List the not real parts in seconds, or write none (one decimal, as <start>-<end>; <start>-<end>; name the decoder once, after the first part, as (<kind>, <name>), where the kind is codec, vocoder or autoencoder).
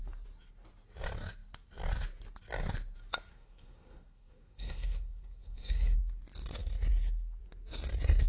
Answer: 3.3-6.0 (codec, SNAC)